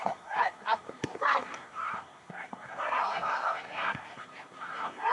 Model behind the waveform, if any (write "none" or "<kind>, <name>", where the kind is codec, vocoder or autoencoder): codec, SNAC